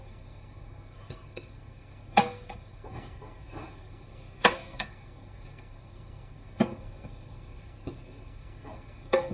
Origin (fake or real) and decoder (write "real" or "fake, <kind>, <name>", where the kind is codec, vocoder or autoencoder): fake, codec, SNAC